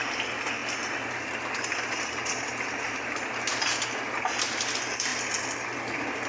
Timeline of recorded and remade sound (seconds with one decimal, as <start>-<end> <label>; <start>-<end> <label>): 0.0-6.3 recorded